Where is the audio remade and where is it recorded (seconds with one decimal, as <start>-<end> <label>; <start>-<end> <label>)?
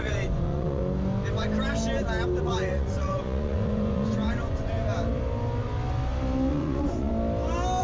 0.0-0.8 remade; 0.8-2.4 recorded; 2.4-4.9 remade; 4.9-6.5 recorded; 6.5-7.1 remade; 7.1-7.8 recorded